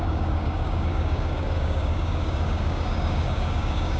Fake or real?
fake